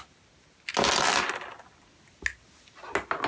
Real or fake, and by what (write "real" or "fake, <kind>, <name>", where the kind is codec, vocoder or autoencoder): real